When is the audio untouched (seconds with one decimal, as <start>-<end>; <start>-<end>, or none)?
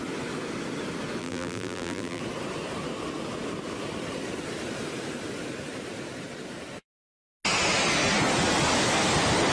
0.0-1.2; 2.2-9.5